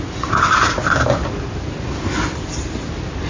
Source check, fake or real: real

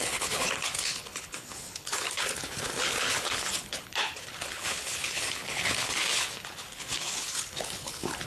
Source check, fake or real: fake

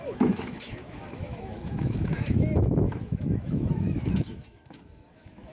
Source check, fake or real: fake